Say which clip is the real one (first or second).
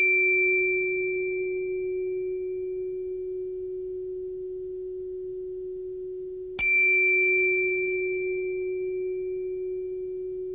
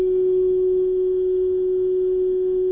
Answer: first